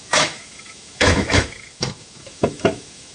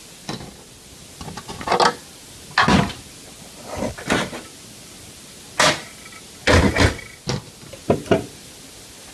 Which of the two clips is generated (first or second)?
first